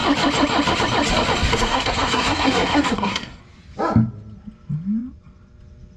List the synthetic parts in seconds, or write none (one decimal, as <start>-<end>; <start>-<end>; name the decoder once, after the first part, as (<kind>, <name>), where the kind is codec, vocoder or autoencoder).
1.5-3.4 (codec, SNAC)